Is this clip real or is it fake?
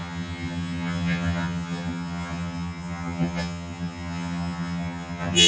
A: fake